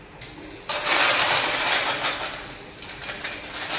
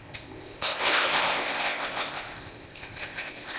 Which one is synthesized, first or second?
second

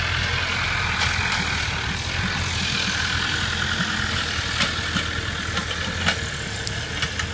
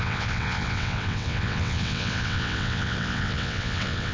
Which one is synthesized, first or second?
second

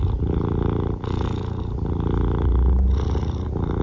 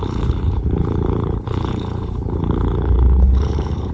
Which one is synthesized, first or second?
second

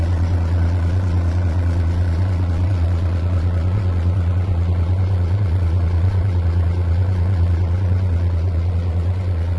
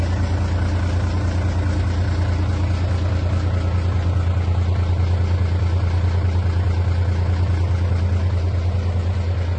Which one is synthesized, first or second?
first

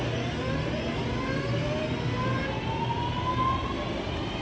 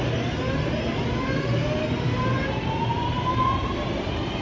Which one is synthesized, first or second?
second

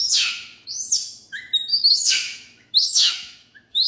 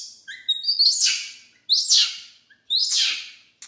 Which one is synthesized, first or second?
first